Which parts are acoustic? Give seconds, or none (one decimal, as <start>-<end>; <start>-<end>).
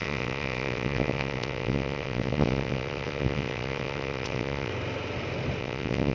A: 4.7-5.6